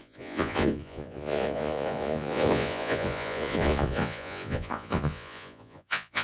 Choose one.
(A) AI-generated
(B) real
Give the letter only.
A